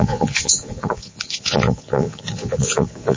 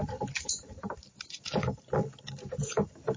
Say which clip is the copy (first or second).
first